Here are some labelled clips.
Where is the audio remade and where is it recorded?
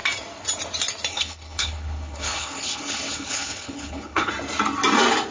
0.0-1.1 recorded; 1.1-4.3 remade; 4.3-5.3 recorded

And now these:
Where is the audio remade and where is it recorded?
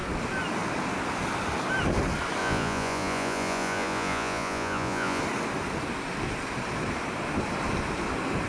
0.0-2.4 recorded; 2.4-5.2 remade; 5.2-8.5 recorded